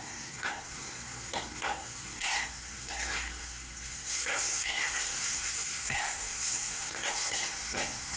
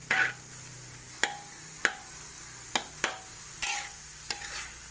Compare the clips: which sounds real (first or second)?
second